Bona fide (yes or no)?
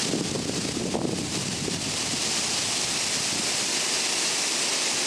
yes